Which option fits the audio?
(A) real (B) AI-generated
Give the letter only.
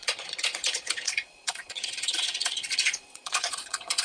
B